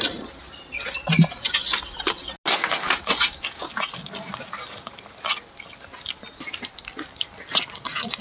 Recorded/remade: recorded